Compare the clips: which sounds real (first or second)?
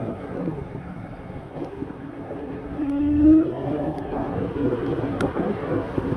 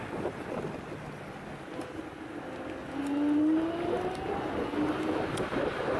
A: second